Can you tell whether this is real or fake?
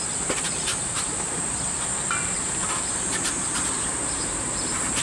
fake